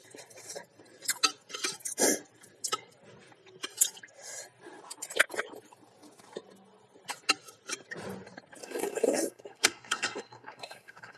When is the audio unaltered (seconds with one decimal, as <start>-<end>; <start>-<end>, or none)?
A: 0.0-8.6